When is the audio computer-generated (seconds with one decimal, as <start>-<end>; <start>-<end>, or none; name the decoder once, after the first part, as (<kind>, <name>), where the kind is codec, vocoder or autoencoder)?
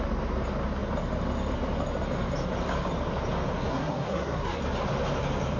3.7-4.6 (codec, SNAC)